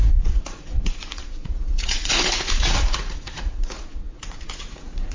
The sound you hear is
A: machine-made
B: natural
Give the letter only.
A